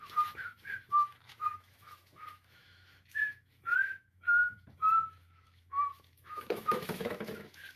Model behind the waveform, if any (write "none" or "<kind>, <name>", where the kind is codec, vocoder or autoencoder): autoencoder, DAC-VAE